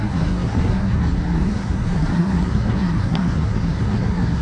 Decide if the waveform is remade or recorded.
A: remade